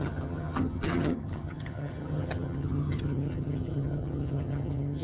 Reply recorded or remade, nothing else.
remade